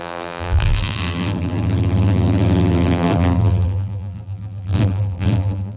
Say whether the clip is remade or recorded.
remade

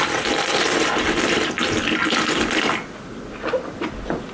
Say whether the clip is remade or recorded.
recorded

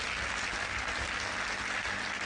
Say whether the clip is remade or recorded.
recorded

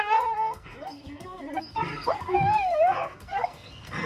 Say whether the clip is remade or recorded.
remade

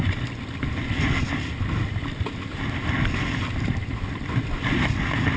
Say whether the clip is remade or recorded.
recorded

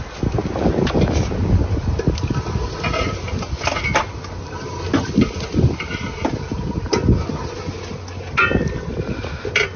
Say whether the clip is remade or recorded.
recorded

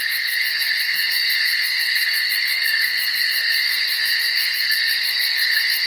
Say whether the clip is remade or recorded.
remade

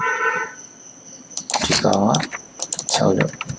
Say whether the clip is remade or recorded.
recorded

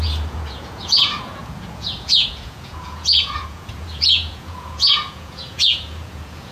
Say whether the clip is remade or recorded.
remade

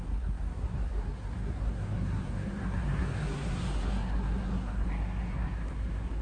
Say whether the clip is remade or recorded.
remade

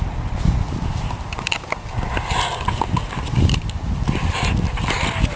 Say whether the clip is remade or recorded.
recorded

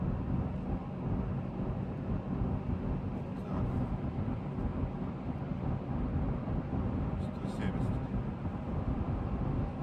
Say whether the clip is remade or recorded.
recorded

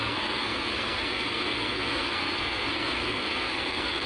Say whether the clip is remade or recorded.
remade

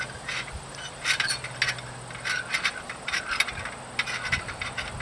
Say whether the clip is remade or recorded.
recorded